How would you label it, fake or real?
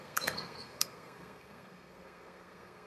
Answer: fake